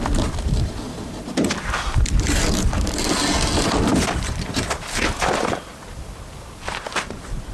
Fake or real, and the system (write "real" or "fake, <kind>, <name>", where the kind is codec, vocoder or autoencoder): real